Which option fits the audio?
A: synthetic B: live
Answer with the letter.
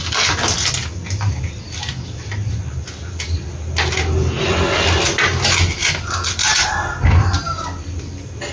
B